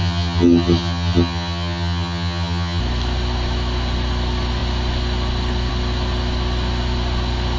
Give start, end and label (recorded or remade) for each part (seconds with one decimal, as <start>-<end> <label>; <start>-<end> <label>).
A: 0.0-2.8 remade; 2.8-7.6 recorded